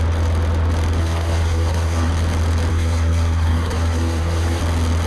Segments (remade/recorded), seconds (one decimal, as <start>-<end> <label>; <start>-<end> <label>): 0.0-1.0 recorded; 1.0-2.1 remade; 2.1-2.7 recorded; 2.7-4.6 remade; 4.6-5.1 recorded